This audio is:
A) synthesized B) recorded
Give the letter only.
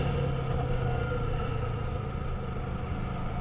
B